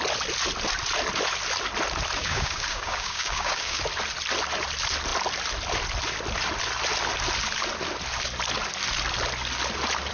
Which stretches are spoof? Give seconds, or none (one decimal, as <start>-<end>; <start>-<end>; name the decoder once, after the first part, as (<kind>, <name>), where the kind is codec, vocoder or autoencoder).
2.2-3.8 (codec, DAC)